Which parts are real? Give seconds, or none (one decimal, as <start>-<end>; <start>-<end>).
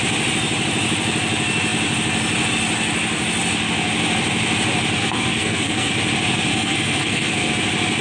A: 0.0-5.0; 5.9-6.5; 7.5-8.0